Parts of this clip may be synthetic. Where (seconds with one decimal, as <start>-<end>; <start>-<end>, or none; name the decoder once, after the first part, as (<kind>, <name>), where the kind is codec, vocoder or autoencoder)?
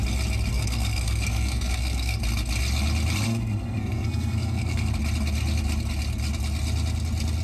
0.5-2.2 (codec, SNAC); 3.3-4.9